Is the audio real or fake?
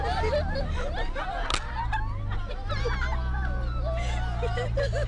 real